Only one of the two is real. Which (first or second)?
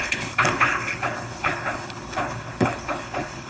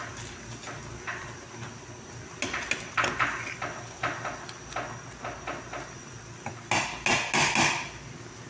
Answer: second